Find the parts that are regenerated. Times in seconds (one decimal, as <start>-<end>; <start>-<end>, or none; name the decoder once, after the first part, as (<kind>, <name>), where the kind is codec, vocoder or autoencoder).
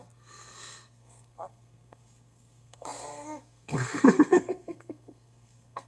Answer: 0.0-5.9 (codec, SNAC)